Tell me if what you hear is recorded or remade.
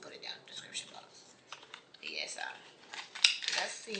recorded